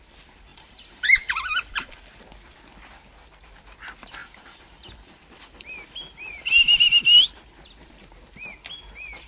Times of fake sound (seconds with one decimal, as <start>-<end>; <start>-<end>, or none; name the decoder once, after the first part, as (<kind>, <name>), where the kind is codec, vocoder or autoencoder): 0.5-2.0 (vocoder, BigVGAN v2); 4.2-6.9